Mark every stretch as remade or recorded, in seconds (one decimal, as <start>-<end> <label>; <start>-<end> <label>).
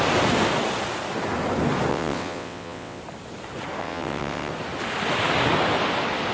0.0-1.9 recorded; 1.9-3.0 remade; 3.0-3.8 recorded; 3.8-4.5 remade; 4.5-6.3 recorded